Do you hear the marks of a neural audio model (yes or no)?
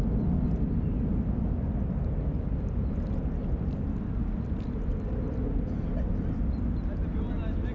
no